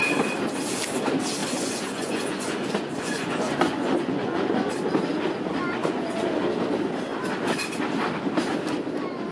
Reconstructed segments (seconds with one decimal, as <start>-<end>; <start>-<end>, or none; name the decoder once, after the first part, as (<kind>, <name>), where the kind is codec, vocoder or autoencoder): 1.4-4.7 (vocoder, Vocos); 5.8-6.3